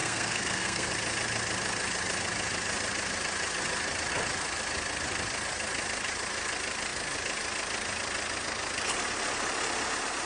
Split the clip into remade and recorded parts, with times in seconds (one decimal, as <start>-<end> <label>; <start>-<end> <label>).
0.0-0.9 remade; 0.9-10.3 recorded